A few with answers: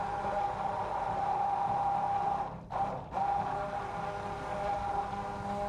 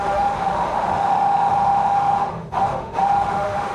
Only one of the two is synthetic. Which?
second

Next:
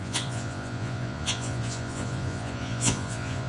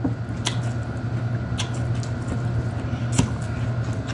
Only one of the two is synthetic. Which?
first